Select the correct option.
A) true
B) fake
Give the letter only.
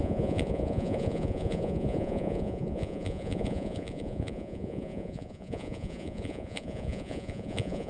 B